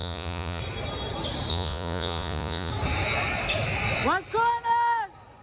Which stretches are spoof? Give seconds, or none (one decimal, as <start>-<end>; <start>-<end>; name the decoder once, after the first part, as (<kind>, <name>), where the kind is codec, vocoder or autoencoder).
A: 0.0-0.6 (vocoder, Vocos); 1.5-2.7